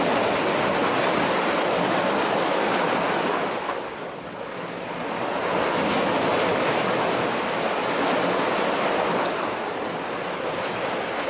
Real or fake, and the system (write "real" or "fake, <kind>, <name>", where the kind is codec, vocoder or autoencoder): real